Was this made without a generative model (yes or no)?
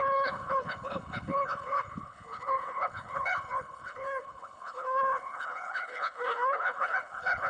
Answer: no